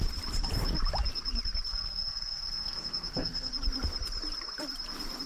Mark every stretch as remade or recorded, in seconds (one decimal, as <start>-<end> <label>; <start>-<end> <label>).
0.0-1.7 recorded; 1.7-3.5 remade; 3.5-5.3 recorded